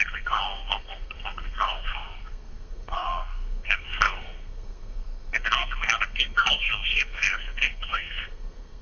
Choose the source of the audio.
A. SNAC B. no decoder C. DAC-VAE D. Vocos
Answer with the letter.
A